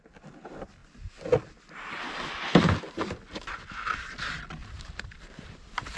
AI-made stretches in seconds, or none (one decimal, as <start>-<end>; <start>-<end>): 4.6-6.0